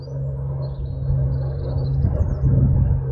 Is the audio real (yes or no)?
yes